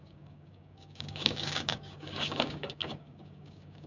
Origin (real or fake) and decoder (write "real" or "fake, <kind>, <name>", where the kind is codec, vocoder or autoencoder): fake, codec, DAC